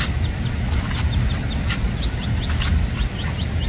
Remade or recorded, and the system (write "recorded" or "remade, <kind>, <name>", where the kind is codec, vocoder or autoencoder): recorded